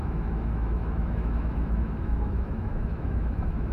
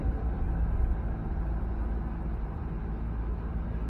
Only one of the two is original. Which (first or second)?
second